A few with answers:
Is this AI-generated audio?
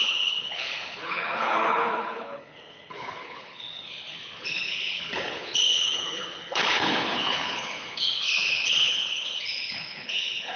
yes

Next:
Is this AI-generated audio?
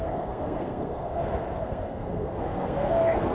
yes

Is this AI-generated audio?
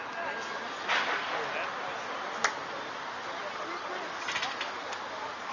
no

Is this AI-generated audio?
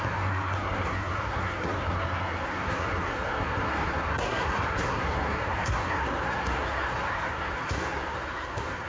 yes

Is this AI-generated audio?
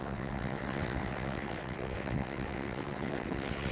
yes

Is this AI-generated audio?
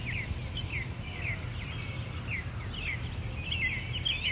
no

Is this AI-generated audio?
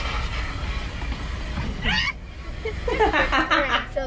no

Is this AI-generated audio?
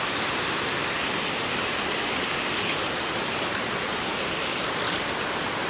yes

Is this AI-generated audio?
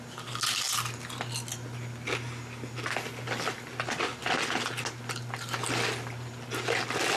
no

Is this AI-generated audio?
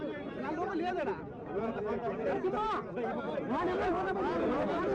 no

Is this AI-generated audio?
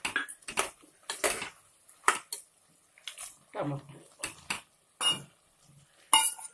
no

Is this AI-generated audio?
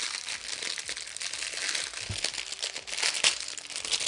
no